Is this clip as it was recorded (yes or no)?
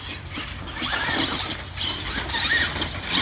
yes